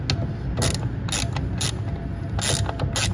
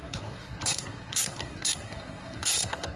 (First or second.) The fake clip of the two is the second